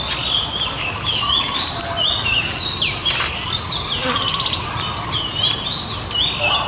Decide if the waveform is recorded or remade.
recorded